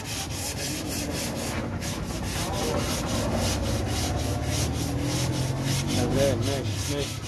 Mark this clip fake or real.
real